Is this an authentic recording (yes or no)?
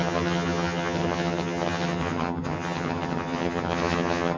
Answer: no